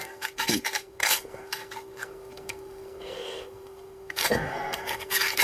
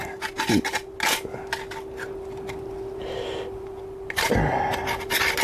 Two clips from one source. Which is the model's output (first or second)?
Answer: first